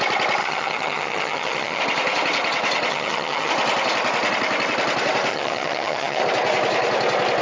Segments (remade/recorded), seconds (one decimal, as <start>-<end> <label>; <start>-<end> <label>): 0.0-0.4 recorded; 0.4-1.8 remade; 1.8-2.9 recorded; 2.9-3.5 remade; 3.5-5.3 recorded; 5.3-6.2 remade; 6.2-7.4 recorded